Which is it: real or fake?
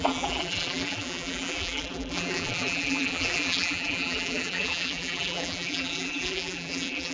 fake